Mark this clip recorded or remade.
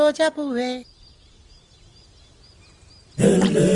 recorded